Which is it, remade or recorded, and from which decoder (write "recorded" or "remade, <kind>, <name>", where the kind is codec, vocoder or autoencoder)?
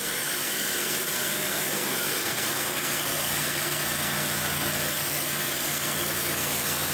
remade, codec, SNAC